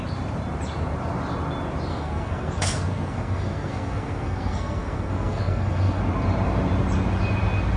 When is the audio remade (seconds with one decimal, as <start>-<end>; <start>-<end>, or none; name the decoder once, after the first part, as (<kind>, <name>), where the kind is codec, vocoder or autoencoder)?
1.9-6.0 (codec, SNAC)